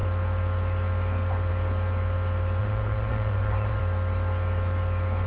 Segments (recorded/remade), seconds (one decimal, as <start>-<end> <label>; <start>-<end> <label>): 0.0-2.6 recorded; 2.6-3.8 remade; 3.8-5.3 recorded